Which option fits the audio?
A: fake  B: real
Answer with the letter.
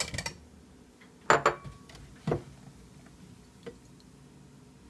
B